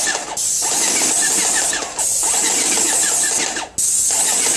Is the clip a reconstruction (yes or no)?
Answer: no